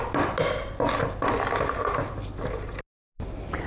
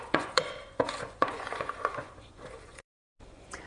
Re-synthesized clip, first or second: second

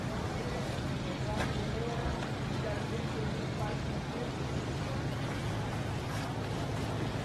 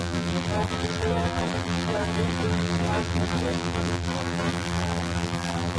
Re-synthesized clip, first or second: second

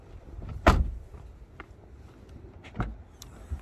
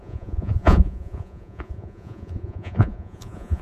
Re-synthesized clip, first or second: second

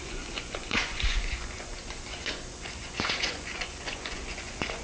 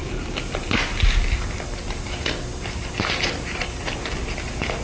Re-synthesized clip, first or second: first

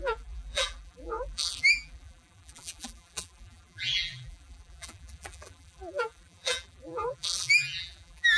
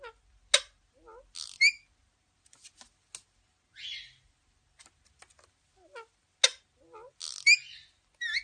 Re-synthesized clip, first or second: first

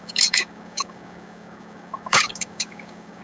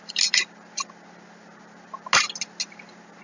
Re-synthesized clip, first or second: first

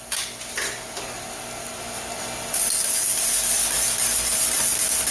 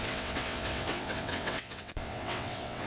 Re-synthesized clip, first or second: second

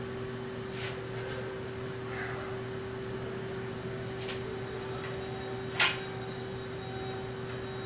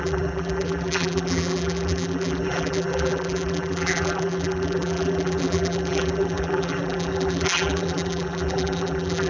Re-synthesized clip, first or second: second